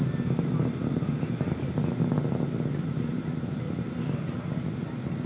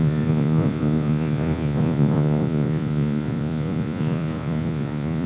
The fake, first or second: second